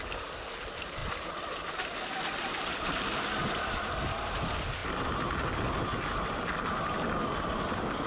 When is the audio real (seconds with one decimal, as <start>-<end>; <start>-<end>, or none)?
0.0-8.1